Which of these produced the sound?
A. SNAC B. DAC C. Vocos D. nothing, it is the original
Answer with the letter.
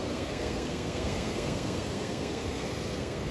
A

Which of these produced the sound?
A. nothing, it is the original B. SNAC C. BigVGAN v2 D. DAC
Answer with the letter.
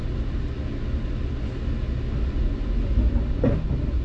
A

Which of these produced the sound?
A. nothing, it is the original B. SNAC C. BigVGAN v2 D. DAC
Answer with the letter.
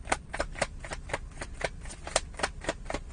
A